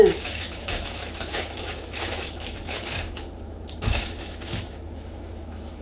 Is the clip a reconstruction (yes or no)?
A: yes